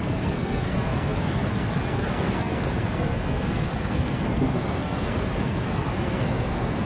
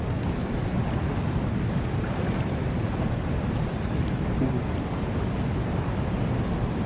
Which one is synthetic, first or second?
first